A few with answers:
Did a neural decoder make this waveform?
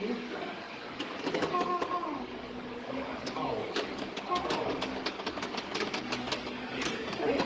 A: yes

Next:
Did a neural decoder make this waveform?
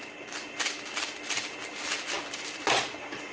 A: no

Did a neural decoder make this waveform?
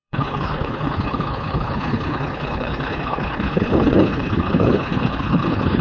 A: yes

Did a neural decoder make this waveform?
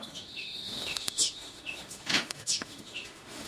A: yes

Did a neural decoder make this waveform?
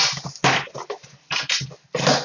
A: no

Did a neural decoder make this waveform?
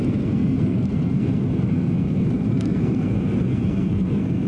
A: yes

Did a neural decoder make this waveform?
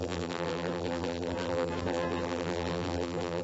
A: yes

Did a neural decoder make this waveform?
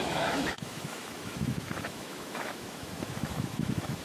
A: yes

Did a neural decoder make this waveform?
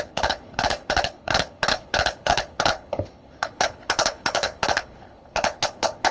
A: yes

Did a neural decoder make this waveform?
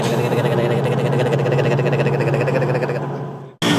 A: no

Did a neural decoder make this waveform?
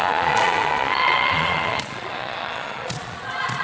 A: yes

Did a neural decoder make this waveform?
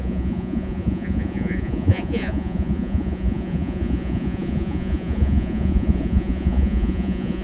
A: yes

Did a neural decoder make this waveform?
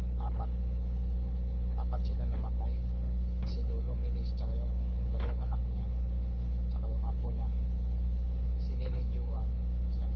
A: yes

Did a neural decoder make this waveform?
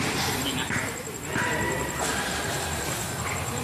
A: no